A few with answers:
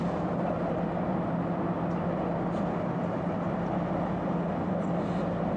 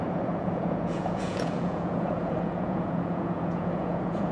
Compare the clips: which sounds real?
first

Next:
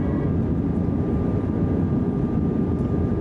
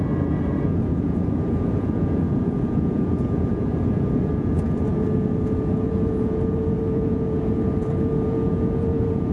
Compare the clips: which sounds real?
first